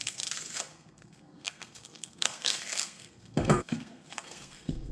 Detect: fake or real fake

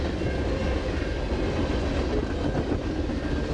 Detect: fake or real real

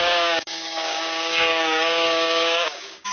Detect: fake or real fake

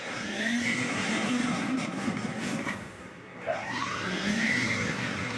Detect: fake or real fake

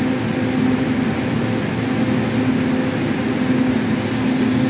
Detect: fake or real real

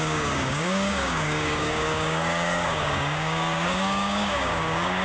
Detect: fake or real fake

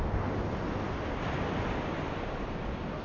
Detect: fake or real real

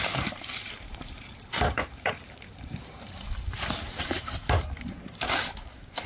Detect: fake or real fake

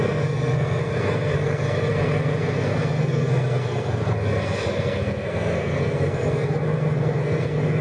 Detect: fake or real fake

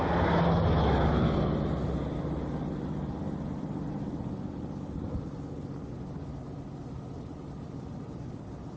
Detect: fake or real real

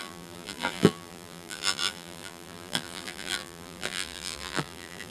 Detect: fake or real fake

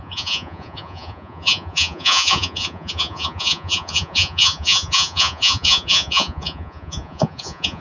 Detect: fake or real fake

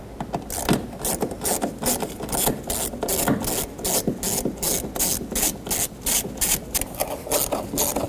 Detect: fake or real real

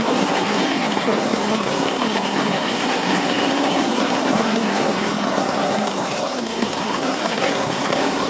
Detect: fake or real fake